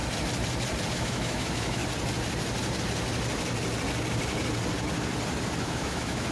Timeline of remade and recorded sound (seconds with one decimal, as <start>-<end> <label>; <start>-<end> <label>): 0.0-0.9 recorded; 0.9-1.8 remade; 1.8-5.6 recorded; 5.6-6.3 remade